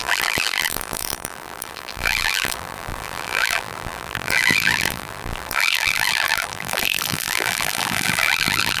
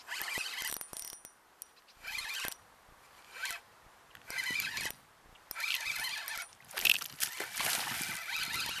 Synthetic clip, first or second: first